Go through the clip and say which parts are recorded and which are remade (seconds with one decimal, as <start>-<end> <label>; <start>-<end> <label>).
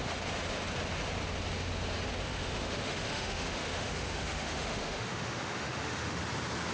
0.0-2.2 recorded; 2.2-6.2 remade; 6.2-6.7 recorded